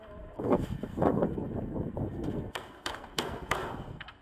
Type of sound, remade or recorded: remade